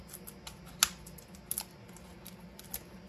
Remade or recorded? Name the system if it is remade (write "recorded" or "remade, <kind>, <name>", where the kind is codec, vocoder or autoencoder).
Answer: recorded